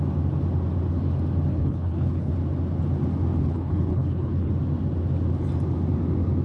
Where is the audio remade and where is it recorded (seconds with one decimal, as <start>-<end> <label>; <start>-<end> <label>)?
0.0-1.5 recorded; 1.5-2.3 remade; 2.3-3.4 recorded; 3.4-4.5 remade; 4.5-6.4 recorded